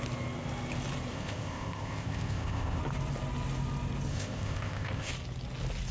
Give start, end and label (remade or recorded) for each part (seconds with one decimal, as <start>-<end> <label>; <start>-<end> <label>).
0.0-1.1 recorded; 1.1-2.8 remade; 2.8-4.1 recorded; 4.1-5.1 remade; 5.1-5.9 recorded